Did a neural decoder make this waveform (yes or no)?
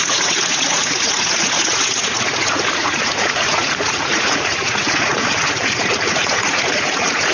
yes